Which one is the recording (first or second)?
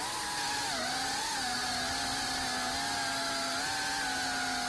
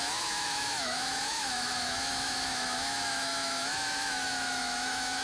first